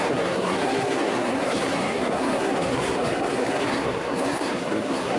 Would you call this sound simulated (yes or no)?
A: yes